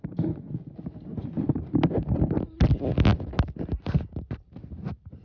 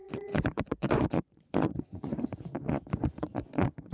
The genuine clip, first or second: first